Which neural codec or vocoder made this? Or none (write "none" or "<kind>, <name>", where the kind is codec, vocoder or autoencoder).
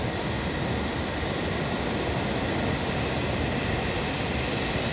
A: none